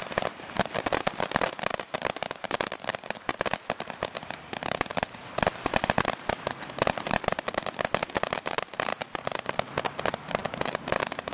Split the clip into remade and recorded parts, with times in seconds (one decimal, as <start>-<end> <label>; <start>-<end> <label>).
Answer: 0.0-5.2 remade; 5.2-5.8 recorded; 5.8-11.3 remade